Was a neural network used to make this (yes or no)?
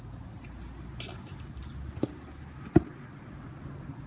no